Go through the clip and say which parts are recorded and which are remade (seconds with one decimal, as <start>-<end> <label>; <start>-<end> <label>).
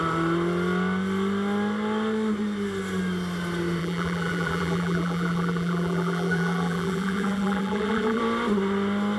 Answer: 0.0-3.8 recorded; 3.8-8.2 remade; 8.2-9.2 recorded